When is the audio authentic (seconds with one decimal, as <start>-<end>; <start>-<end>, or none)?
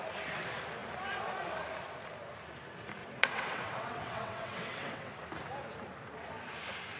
0.0-3.0; 5.1-7.0